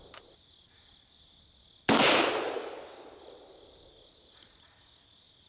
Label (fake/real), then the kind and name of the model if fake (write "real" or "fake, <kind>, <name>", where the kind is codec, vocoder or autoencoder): real